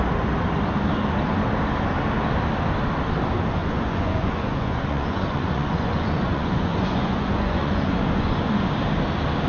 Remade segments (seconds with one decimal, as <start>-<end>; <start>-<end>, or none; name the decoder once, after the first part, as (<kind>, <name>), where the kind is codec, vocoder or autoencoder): 3.6-8.7 (vocoder, Vocos)

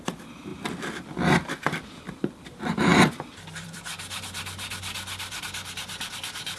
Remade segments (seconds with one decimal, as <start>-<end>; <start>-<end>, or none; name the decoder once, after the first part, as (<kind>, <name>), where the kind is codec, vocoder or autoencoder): 0.0-6.6 (vocoder, BigVGAN v2)

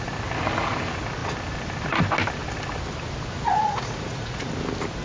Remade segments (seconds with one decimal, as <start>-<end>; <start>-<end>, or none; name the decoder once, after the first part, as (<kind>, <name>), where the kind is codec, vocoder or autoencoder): 3.5-4.5 (vocoder, Vocos)

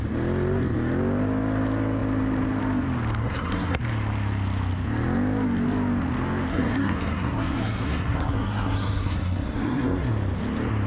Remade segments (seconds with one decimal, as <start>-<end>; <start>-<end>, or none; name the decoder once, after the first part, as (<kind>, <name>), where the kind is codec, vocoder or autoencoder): 3.2-3.8 (codec, SNAC); 6.5-10.1

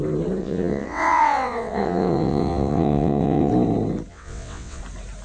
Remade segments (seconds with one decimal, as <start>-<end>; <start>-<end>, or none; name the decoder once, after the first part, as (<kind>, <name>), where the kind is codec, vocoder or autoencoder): 0.4-3.5 (vocoder, WaveNeXt); 4.1-4.8

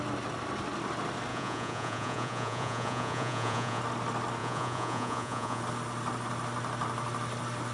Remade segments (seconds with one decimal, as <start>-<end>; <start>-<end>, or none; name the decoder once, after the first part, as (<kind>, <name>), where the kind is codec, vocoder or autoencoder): 1.3-3.8 (vocoder, Vocos); 4.4-5.6

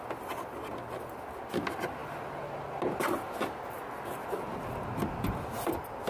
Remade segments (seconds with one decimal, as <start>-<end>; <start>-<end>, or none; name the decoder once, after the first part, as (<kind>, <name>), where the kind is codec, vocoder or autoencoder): none

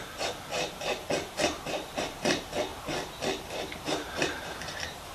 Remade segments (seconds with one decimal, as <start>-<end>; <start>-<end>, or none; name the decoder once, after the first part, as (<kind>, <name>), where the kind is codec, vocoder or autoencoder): 1.3-2.7 (vocoder, BigVGAN v2); 3.5-5.1